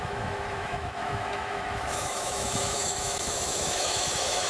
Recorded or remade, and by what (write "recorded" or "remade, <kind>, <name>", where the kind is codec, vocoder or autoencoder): remade, autoencoder, DAC-VAE